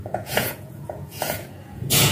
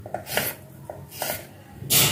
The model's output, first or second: first